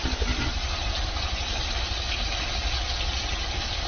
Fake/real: real